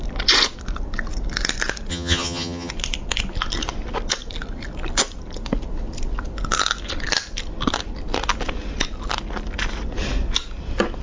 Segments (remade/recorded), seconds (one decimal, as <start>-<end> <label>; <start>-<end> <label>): 0.0-1.9 recorded; 1.9-2.7 remade; 2.7-11.0 recorded